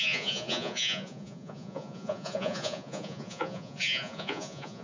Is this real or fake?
fake